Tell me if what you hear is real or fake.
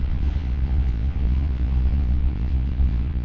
fake